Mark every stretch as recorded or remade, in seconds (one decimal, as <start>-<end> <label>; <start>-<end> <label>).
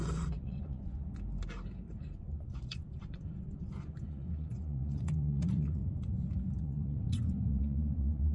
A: 0.0-1.1 remade; 1.1-2.2 recorded; 2.2-5.8 remade; 5.8-6.6 recorded; 6.6-8.3 remade